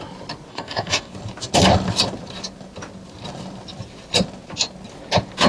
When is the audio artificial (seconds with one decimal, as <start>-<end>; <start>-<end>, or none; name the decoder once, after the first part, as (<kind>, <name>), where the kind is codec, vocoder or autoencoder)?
0.5-1.1 (codec, DAC)